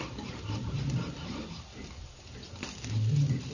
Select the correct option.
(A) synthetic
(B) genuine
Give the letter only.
B